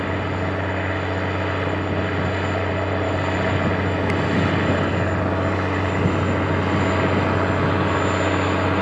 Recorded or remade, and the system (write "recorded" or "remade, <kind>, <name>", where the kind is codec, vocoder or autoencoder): recorded